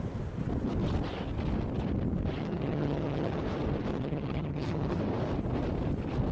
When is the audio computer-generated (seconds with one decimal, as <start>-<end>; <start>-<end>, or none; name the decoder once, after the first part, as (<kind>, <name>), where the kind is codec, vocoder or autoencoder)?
2.4-3.4 (vocoder, HiFi-GAN); 3.9-5.0